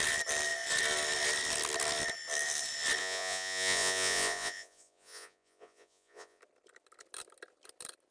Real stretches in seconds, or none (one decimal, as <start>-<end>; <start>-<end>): 0.0-3.0; 6.4-8.1